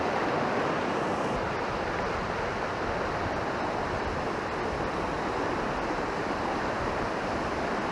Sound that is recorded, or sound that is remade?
recorded